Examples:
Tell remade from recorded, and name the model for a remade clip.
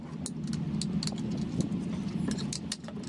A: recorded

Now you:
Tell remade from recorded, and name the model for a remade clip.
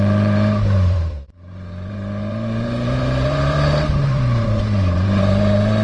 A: remade, vocoder, BigVGAN v2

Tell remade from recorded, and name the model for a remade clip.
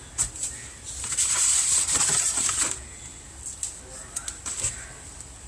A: remade, vocoder, BigVGAN v2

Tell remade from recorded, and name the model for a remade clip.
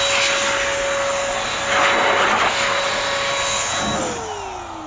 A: recorded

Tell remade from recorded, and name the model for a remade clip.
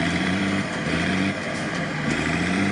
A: remade, vocoder, BigVGAN v2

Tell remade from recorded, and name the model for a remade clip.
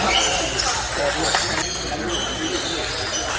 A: recorded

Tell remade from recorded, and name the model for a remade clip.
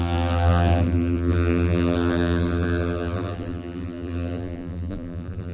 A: remade, vocoder, BigVGAN v2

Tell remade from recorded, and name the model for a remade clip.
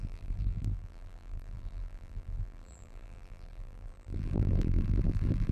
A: remade, vocoder, BigVGAN v2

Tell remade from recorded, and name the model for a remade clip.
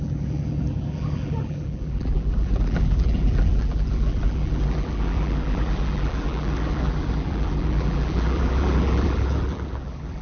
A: remade, vocoder, BigVGAN v2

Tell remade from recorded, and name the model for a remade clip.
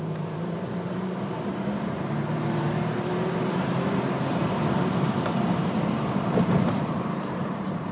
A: remade, vocoder, BigVGAN v2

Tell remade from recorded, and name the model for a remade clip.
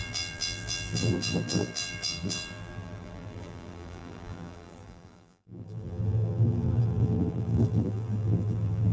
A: remade, vocoder, BigVGAN v2